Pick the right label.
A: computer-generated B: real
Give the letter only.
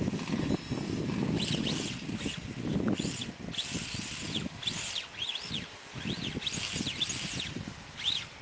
B